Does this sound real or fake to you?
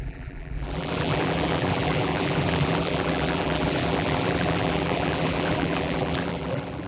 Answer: fake